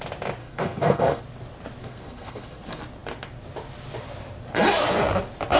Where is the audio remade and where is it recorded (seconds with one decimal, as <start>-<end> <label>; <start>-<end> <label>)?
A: 0.0-0.4 recorded; 0.4-1.2 remade; 1.2-1.8 recorded; 1.8-2.6 remade; 2.6-5.6 recorded